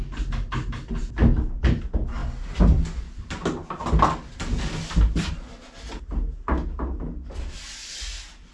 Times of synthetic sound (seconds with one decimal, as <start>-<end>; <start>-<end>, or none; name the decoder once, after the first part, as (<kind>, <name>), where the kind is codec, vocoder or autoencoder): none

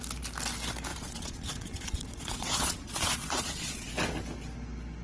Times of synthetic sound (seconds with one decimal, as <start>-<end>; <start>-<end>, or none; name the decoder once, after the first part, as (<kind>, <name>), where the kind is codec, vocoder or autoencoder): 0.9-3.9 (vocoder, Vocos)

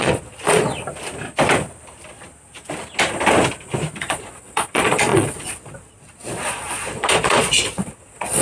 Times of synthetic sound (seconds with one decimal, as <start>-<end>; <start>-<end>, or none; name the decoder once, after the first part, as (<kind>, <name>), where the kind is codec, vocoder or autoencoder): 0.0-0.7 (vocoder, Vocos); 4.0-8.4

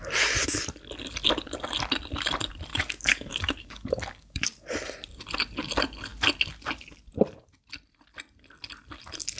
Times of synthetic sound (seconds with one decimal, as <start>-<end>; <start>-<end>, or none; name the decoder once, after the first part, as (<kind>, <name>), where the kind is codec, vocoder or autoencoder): 2.7-4.7 (codec, DAC)